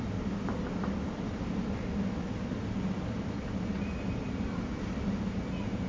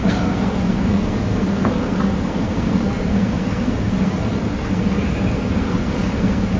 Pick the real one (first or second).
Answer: first